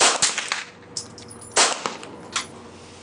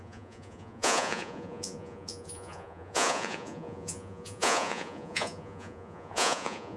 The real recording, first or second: first